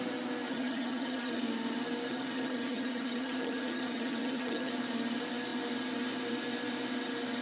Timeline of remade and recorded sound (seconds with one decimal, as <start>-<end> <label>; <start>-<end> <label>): 0.0-0.5 recorded; 0.5-1.4 remade; 1.4-2.1 recorded; 2.1-4.7 remade; 4.7-7.4 recorded